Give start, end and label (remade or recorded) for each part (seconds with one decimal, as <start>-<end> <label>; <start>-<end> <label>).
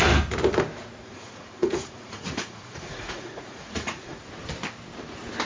0.0-1.0 recorded; 1.0-4.3 remade; 4.3-5.5 recorded